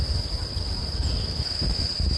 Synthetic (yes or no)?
no